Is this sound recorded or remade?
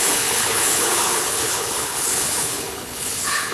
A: remade